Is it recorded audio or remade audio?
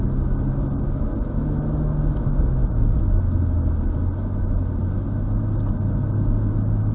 recorded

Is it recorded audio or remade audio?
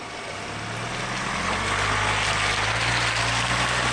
recorded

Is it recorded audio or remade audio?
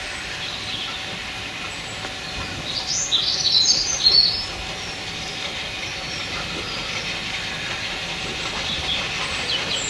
recorded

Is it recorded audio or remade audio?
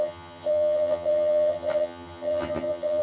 remade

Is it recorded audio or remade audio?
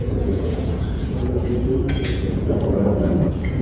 remade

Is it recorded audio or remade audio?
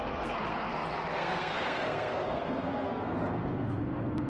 remade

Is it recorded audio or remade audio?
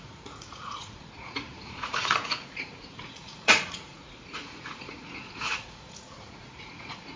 remade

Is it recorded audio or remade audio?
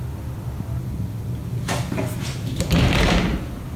recorded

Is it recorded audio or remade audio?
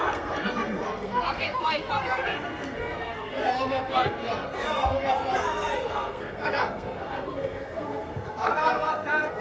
remade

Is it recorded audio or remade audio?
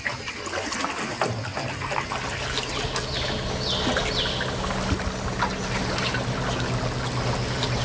recorded